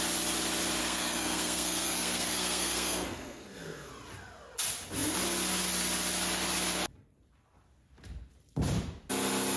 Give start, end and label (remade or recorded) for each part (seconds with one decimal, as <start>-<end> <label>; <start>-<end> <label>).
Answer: 0.0-0.8 recorded; 0.8-3.9 remade; 3.9-9.6 recorded